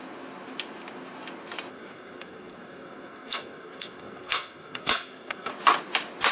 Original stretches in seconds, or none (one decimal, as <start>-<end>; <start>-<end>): 0.0-1.7; 5.5-6.3